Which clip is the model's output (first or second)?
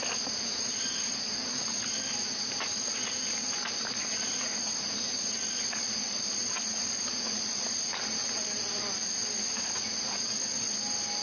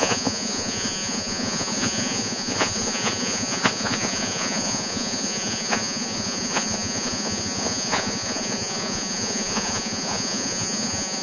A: second